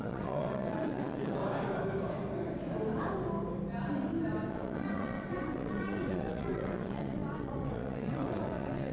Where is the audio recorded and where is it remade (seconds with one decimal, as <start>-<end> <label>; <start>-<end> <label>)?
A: 0.0-1.4 remade; 1.4-4.5 recorded; 4.5-8.9 remade

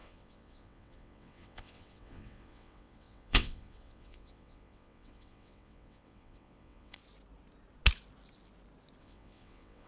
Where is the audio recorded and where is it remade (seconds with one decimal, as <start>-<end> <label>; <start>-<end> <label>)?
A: 0.0-7.0 remade; 7.0-9.0 recorded; 9.0-9.9 remade

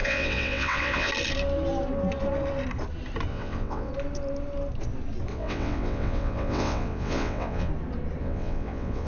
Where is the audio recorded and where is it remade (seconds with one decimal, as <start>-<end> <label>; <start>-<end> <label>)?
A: 0.0-1.1 remade; 1.1-3.3 recorded; 3.3-3.9 remade; 3.9-5.3 recorded; 5.3-7.7 remade; 7.7-8.2 recorded; 8.2-9.1 remade

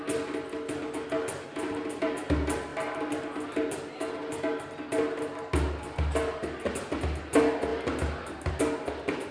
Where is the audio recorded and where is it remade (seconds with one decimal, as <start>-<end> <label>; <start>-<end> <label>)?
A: 0.0-9.3 recorded

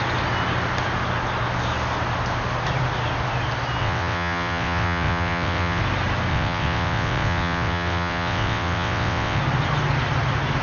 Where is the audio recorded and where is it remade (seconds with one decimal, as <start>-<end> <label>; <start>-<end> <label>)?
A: 0.0-3.8 recorded; 3.8-5.8 remade; 5.8-6.3 recorded; 6.3-9.4 remade; 9.4-10.6 recorded

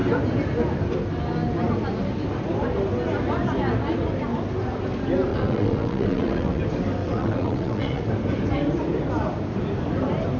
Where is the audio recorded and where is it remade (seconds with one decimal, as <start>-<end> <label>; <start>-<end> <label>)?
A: 0.0-5.3 recorded; 5.3-6.6 remade; 6.6-7.0 recorded; 7.0-8.0 remade; 8.0-10.4 recorded

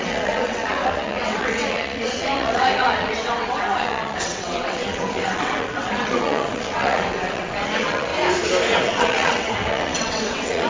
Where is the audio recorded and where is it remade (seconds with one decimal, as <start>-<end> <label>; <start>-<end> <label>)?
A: 0.0-8.1 remade; 8.1-8.8 recorded; 8.8-10.7 remade